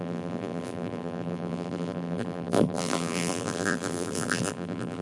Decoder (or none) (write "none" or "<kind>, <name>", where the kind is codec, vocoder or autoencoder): vocoder, BigVGAN v2